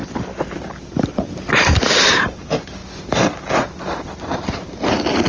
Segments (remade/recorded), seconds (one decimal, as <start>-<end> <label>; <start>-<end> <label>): 0.0-2.3 recorded; 2.3-2.8 remade; 2.8-3.8 recorded; 3.8-5.3 remade

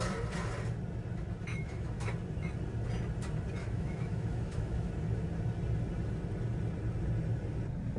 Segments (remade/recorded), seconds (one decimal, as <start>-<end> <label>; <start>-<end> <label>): 0.0-1.5 recorded; 1.5-2.1 remade; 2.1-3.6 recorded; 3.6-4.9 remade; 4.9-8.0 recorded

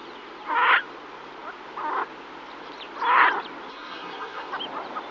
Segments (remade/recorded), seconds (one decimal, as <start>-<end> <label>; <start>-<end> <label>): 0.0-3.7 recorded; 3.7-4.5 remade; 4.5-5.1 recorded